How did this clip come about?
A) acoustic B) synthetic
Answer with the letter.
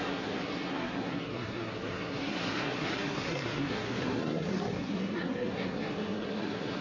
B